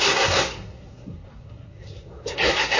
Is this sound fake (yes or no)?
yes